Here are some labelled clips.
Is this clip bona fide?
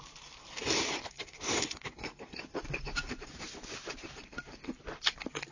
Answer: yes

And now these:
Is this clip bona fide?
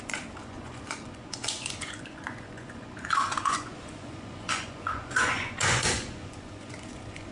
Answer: no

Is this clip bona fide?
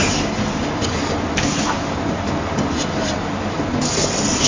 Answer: yes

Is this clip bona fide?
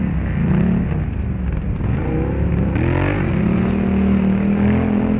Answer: yes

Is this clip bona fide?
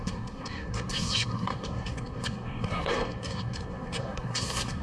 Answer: no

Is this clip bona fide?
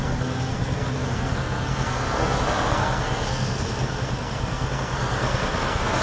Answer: no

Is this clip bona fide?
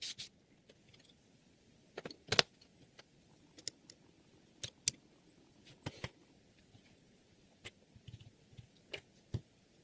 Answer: yes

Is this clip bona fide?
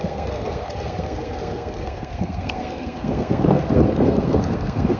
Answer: no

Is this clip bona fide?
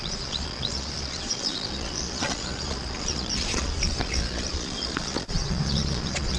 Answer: no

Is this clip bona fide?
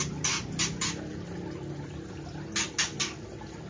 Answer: yes